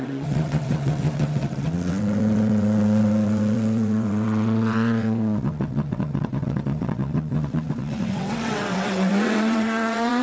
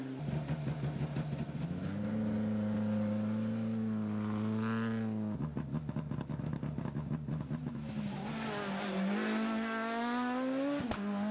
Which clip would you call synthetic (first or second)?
first